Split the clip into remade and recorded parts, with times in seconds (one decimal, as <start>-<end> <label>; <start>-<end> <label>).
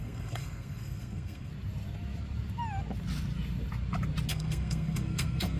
0.0-1.5 remade; 1.5-4.3 recorded; 4.3-5.6 remade